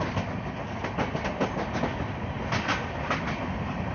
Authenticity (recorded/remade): recorded